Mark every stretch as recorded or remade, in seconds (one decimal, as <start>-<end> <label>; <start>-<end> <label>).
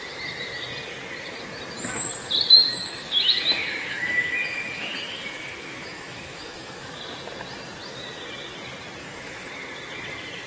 0.0-2.7 recorded; 2.7-7.0 remade; 7.0-9.0 recorded; 9.0-9.5 remade; 9.5-10.5 recorded